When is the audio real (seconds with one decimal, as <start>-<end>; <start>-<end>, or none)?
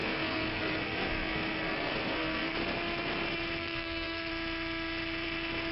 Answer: 2.5-3.6; 4.3-5.7